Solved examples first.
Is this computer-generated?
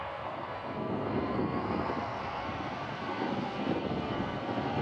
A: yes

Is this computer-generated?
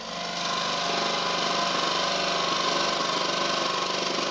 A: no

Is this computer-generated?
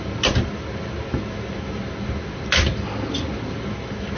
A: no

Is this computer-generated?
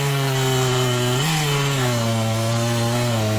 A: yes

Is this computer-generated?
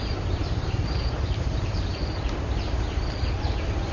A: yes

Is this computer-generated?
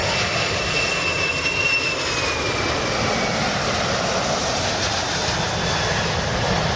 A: no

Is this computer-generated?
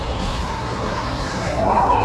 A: yes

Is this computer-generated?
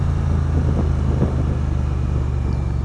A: no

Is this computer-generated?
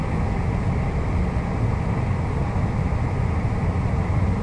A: no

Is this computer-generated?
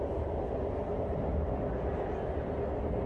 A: no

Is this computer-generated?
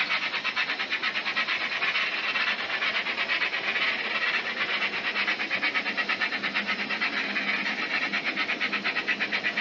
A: no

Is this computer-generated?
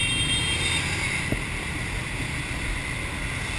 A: no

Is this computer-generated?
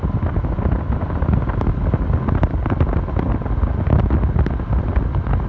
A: no